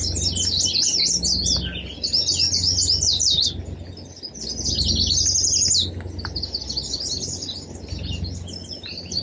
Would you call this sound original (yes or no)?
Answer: yes